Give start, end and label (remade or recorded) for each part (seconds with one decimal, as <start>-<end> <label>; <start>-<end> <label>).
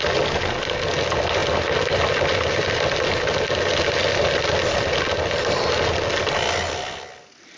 0.0-7.6 recorded